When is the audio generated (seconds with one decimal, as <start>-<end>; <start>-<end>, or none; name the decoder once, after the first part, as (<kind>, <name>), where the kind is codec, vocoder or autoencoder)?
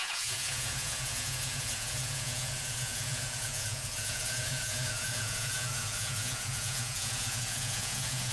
0.0-8.3 (vocoder, Vocos)